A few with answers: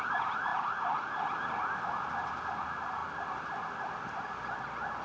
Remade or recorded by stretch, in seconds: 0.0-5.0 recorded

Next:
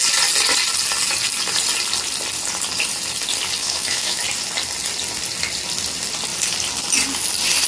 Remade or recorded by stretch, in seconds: 0.0-3.6 recorded; 3.6-4.2 remade; 4.2-7.7 recorded

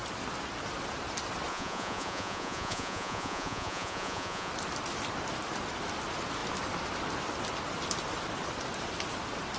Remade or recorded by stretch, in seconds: 0.0-1.5 recorded; 1.5-4.5 remade; 4.5-9.6 recorded